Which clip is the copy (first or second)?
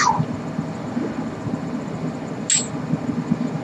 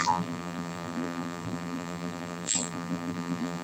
second